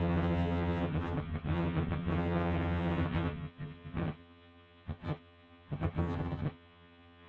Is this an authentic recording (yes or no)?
no